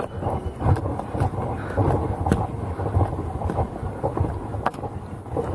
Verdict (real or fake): real